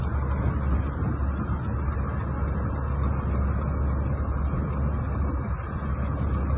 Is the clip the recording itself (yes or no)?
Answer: yes